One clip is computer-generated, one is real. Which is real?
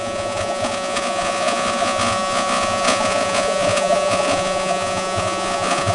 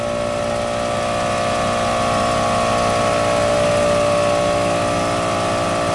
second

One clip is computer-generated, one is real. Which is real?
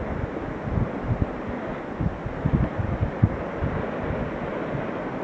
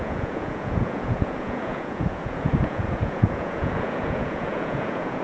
first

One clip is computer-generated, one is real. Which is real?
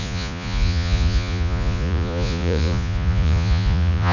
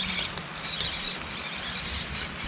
second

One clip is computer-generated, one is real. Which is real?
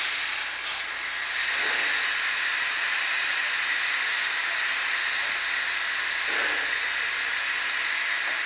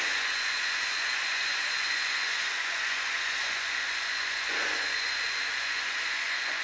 first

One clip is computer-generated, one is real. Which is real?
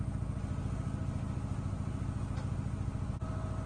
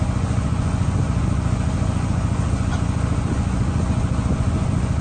first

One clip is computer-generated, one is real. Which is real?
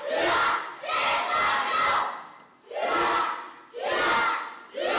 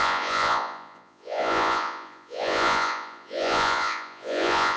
first